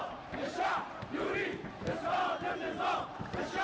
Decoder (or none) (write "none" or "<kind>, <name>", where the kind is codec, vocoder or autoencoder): none